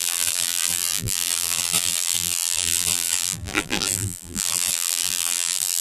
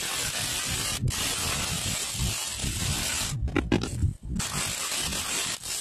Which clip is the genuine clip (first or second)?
second